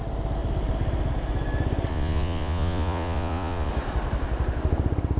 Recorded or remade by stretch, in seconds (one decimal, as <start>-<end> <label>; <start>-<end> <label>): 0.0-1.9 recorded; 1.9-3.7 remade; 3.7-5.2 recorded